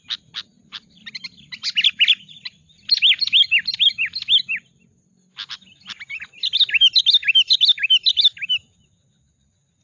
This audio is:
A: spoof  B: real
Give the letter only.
B